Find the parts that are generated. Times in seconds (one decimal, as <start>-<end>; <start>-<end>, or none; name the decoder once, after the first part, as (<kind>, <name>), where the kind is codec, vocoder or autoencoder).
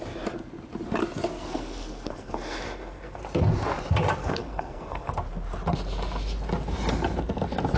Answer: 1.3-3.2 (codec, SNAC); 4.2-5.1